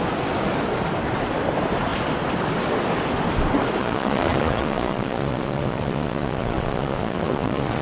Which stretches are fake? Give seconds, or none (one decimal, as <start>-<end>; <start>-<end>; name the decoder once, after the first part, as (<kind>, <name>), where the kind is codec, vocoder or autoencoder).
3.8-7.8 (vocoder, Vocos)